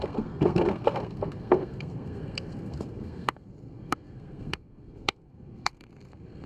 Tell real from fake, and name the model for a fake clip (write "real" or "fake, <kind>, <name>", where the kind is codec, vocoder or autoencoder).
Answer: fake, codec, SNAC